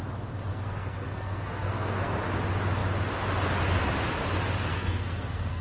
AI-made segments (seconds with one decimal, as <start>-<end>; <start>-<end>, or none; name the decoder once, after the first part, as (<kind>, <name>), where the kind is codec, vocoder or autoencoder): 0.5-2.1 (codec, SNAC); 4.7-5.6